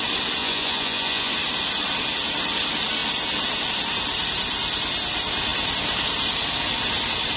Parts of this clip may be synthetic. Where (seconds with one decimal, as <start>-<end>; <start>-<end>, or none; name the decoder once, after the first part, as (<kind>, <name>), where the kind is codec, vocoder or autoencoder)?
0.4-1.3 (vocoder, Vocos)